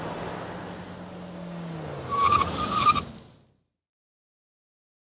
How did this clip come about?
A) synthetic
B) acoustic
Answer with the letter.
B